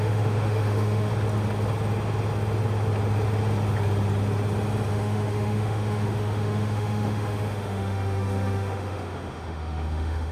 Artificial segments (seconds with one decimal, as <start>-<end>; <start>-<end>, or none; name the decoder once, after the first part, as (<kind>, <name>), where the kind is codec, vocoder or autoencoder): 0.0-1.1 (autoencoder, DAC-VAE); 4.9-10.3